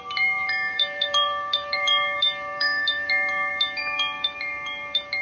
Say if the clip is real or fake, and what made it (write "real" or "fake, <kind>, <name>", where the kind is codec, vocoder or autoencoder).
fake, vocoder, BigVGAN v2